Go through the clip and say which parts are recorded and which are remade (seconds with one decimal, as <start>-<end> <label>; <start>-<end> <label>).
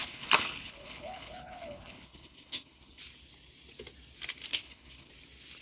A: 0.0-3.0 remade; 3.0-4.5 recorded; 4.5-5.1 remade; 5.1-5.6 recorded